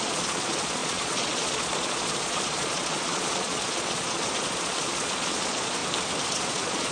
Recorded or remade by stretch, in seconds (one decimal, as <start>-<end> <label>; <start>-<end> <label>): 0.0-5.8 remade; 5.8-6.3 recorded; 6.3-6.9 remade